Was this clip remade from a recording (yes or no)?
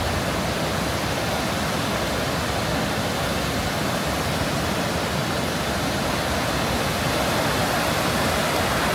no